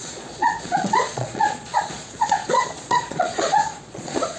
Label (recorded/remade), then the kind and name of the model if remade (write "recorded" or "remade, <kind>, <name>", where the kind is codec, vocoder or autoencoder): remade, vocoder, Vocos